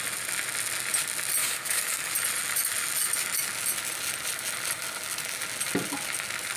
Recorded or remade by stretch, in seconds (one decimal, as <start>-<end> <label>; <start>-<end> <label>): 0.0-1.4 recorded; 1.4-2.1 remade; 2.1-6.6 recorded